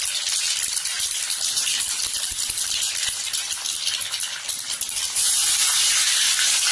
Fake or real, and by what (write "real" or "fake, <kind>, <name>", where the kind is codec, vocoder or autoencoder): real